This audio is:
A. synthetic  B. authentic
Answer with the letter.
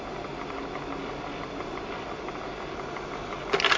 B